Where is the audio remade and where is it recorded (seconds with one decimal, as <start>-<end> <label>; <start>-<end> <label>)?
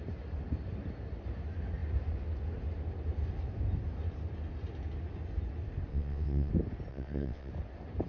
0.0-5.9 recorded; 5.9-6.5 remade; 6.5-6.9 recorded; 6.9-7.5 remade; 7.5-8.1 recorded